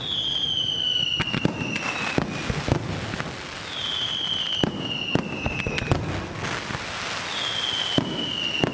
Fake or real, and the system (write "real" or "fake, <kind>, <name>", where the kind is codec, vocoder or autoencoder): real